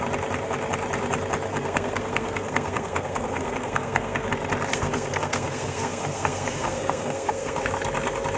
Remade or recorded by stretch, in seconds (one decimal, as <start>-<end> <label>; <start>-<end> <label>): 0.0-1.5 recorded; 1.5-4.3 remade; 4.3-4.7 recorded; 4.7-7.6 remade; 7.6-8.4 recorded